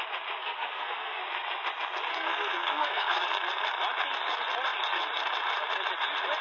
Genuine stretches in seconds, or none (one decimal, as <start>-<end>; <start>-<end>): 0.0-0.4; 1.2-2.1; 3.2-6.4